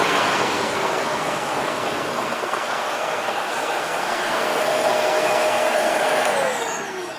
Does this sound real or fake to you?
fake